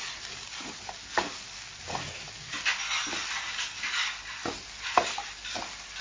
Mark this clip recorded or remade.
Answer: recorded